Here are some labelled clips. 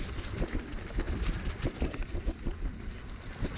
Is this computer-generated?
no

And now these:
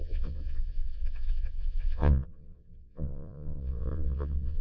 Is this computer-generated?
yes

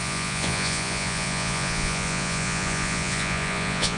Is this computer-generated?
yes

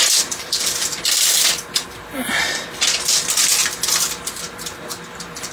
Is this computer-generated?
no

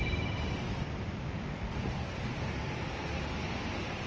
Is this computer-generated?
no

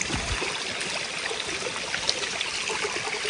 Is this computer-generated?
no